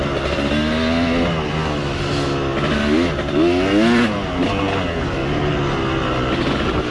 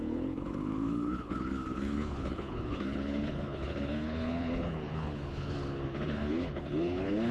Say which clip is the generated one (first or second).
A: second